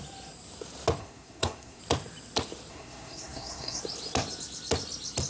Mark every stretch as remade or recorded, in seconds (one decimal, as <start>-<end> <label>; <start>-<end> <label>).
0.0-1.0 recorded; 1.0-1.8 remade; 1.8-2.7 recorded; 2.7-3.8 remade; 3.8-5.3 recorded